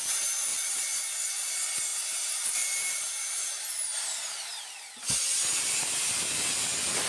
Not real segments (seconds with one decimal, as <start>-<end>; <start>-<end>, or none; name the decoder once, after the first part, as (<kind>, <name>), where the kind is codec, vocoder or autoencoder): 0.5-1.0 (vocoder, BigVGAN v2); 1.9-4.6

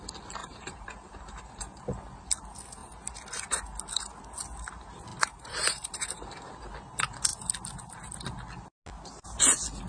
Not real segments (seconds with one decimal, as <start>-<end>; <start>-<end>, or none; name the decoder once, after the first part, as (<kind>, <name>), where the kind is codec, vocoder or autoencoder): 0.4-1.8 (vocoder, BigVGAN v2); 5.1-6.5

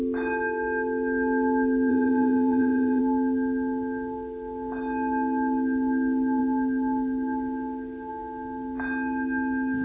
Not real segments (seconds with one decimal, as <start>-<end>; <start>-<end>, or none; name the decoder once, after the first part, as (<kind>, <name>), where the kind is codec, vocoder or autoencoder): 1.9-3.0 (vocoder, BigVGAN v2)

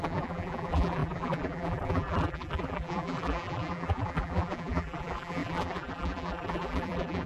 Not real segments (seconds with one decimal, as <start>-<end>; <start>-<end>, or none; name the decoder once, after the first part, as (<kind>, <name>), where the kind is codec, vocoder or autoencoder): 0.0-7.3 (vocoder, BigVGAN v2)

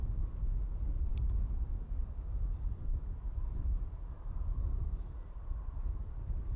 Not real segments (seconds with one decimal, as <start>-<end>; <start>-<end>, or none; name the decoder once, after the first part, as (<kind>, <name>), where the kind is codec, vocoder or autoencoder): 1.1-1.7 (vocoder, BigVGAN v2)

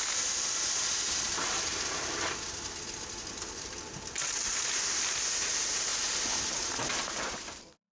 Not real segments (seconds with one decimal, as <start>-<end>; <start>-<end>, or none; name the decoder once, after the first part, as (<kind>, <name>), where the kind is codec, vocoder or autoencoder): 5.9-7.9 (vocoder, BigVGAN v2)

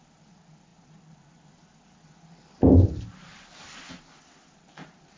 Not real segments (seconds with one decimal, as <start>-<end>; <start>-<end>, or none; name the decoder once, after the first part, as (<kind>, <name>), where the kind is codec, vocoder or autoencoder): 0.7-3.8 (vocoder, BigVGAN v2)

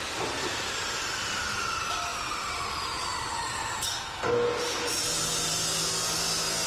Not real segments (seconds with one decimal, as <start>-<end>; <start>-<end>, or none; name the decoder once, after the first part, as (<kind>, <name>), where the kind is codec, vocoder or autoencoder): none